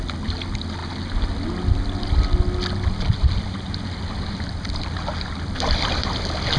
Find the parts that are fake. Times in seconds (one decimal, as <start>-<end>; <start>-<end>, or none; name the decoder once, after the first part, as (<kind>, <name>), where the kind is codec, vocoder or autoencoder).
none